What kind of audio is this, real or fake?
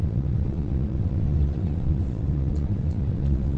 fake